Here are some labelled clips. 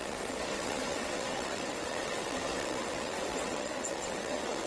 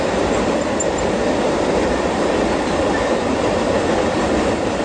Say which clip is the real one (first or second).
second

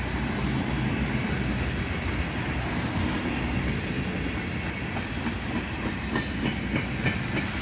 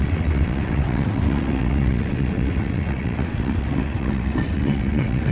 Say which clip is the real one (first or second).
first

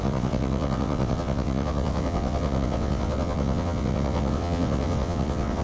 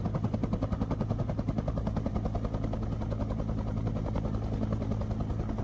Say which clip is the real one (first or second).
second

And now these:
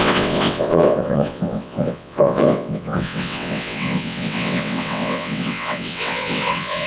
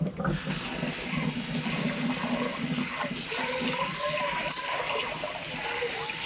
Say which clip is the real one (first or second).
second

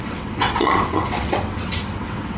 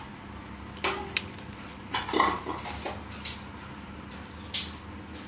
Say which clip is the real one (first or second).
second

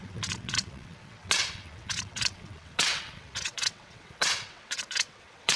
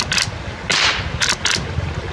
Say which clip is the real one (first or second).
second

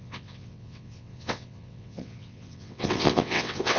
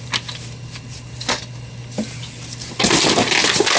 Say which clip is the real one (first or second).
second